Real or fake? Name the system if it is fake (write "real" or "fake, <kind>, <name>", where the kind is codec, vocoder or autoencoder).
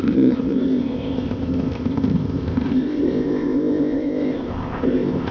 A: fake, codec, ZipCodec